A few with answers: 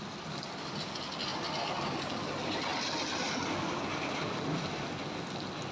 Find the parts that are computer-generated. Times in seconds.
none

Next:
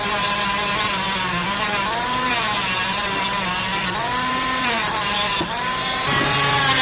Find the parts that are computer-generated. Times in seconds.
none

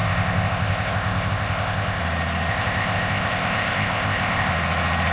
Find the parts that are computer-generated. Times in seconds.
0.0-2.0 (codec, ZipCodec); 2.5-4.5

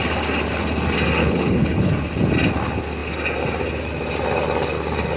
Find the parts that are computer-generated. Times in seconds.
1.2-1.9 (codec, HILCodec)

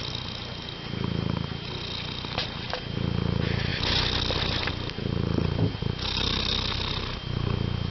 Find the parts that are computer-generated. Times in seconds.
none

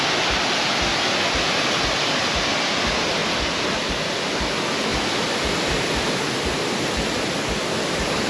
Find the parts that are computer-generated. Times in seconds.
none

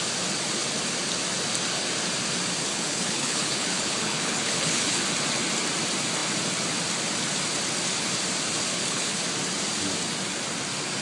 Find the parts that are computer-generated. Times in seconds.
2.7-5.0 (codec, HILCodec); 8.7-9.2